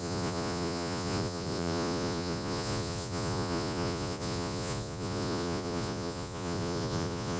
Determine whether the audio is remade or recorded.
remade